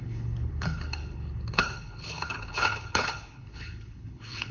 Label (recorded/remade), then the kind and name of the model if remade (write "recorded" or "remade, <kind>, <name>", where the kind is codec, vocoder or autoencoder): remade, codec, HILCodec